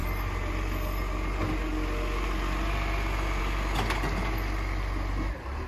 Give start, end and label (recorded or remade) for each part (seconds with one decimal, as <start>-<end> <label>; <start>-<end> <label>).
0.0-5.7 recorded